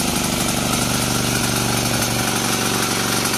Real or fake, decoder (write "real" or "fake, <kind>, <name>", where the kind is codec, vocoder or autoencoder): real